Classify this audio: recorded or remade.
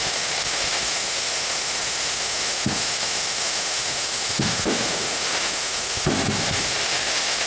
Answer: remade